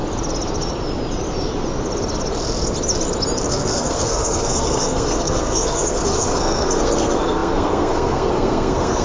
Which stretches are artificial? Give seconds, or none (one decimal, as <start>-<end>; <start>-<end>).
3.5-9.0